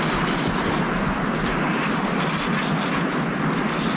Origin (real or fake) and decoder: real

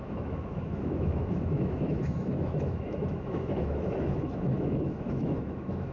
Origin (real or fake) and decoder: fake, autoencoder, DAC-VAE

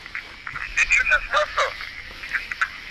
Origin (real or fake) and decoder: real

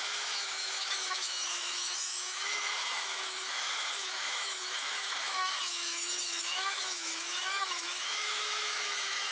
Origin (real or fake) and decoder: fake, autoencoder, DAC-VAE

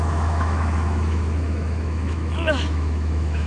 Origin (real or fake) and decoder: fake, autoencoder, DAC-VAE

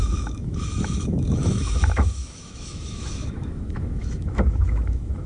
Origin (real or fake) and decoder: fake, autoencoder, DAC-VAE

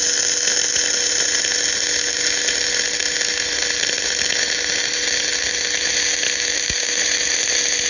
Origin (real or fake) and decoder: real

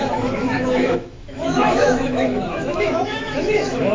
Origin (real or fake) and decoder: fake, autoencoder, DAC-VAE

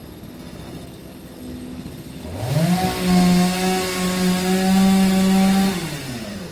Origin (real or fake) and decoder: real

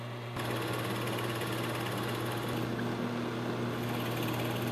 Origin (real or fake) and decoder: real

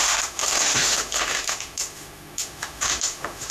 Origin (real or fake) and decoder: fake, autoencoder, DAC-VAE